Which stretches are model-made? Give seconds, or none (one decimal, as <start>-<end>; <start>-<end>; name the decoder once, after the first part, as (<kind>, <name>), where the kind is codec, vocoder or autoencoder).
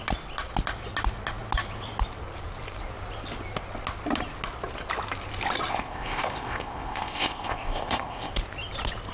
5.7-8.3 (codec, ZipCodec)